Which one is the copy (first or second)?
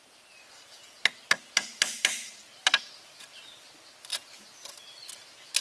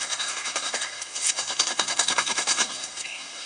second